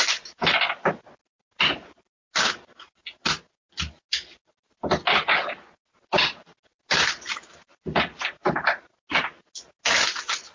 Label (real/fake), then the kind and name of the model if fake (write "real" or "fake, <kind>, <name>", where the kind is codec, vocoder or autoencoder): real